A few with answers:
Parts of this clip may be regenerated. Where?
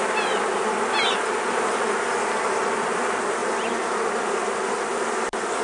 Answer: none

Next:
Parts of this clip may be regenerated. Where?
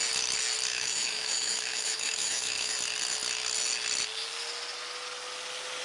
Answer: 0.7-2.7 (autoencoder, DAC-VAE)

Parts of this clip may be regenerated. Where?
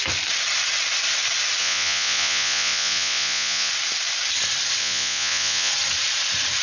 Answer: 1.6-3.7 (vocoder, Vocos); 4.8-5.7